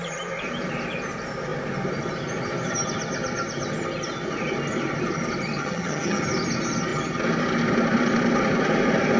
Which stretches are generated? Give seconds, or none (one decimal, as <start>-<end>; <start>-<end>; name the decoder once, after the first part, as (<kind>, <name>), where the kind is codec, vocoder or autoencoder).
5.6-6.2 (vocoder, HiFi-GAN)